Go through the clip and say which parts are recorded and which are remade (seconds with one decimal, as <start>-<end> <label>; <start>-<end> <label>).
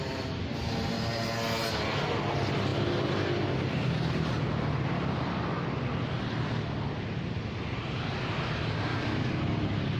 0.0-8.9 recorded; 8.9-9.4 remade; 9.4-10.0 recorded